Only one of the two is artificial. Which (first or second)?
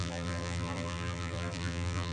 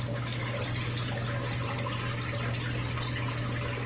first